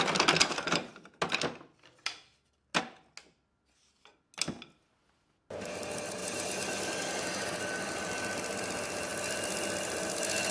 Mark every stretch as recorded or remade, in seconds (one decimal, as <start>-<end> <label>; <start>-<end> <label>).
0.0-10.5 recorded